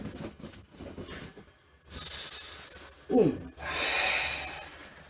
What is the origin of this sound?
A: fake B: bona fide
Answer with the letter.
B